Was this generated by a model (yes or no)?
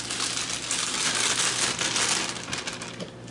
no